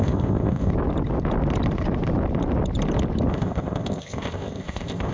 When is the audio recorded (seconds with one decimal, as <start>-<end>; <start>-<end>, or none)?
0.7-3.3